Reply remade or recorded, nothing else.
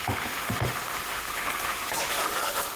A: remade